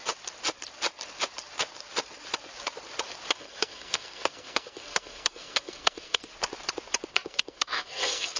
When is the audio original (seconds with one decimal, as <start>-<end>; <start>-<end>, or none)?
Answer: 0.0-3.3; 6.3-7.1